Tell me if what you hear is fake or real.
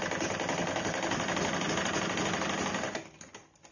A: real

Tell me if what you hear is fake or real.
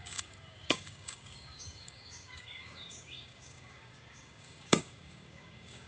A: fake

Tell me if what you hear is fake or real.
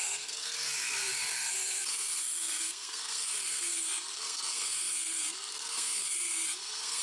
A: fake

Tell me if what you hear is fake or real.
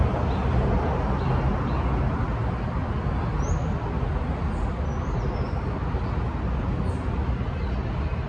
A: real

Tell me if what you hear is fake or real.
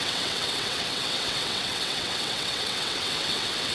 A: fake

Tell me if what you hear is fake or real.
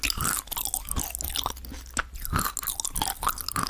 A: real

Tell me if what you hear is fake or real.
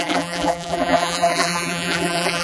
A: fake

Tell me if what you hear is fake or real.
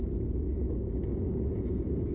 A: fake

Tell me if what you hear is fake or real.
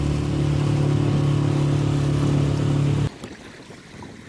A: real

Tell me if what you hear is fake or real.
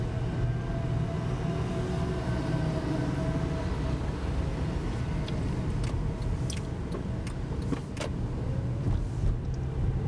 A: real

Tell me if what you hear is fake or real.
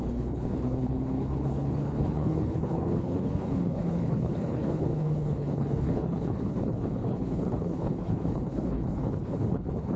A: fake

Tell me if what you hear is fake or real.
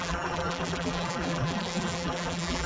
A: fake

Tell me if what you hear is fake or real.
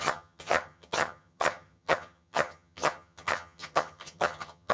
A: fake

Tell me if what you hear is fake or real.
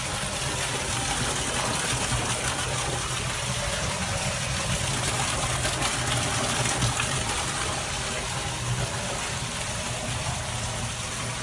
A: real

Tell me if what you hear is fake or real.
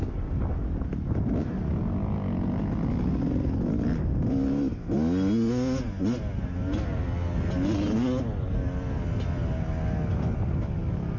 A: real